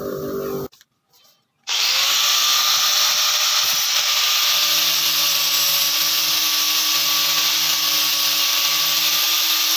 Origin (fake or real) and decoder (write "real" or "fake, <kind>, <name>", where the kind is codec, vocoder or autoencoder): real